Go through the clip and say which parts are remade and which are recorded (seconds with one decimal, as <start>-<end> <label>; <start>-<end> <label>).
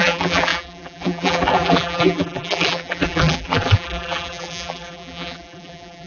0.0-6.1 remade